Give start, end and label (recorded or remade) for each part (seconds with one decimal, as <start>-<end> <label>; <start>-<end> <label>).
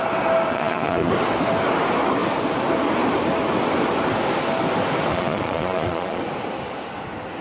0.0-0.5 recorded; 0.5-1.1 remade; 1.1-5.1 recorded; 5.1-6.2 remade; 6.2-7.4 recorded